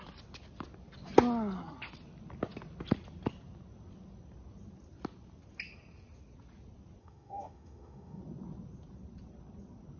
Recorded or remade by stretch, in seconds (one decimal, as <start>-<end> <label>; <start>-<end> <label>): 0.0-7.0 recorded; 7.0-8.2 remade; 8.2-10.0 recorded